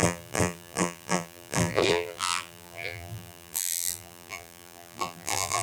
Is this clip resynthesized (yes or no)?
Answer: yes